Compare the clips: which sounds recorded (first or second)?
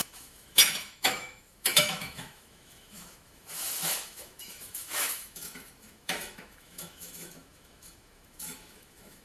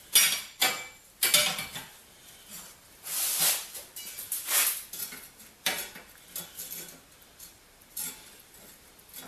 second